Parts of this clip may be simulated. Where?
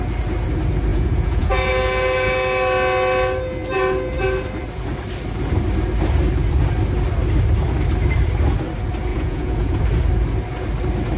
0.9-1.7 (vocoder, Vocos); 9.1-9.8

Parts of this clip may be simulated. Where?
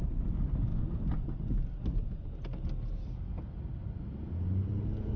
none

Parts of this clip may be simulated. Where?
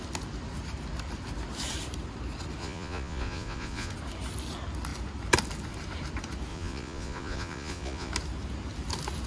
2.6-3.9 (vocoder, Vocos); 6.5-8.1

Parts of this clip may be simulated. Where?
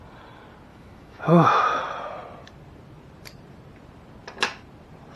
0.7-1.8 (autoencoder, DAC-VAE)